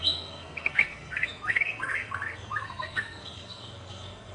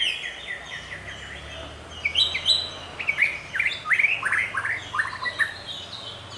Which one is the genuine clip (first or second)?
second